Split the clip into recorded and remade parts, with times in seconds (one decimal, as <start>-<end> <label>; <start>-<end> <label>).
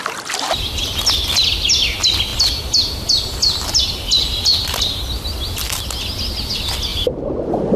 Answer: 0.0-6.9 recorded; 6.9-7.8 remade